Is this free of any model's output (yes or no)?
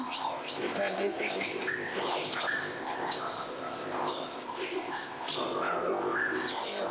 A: no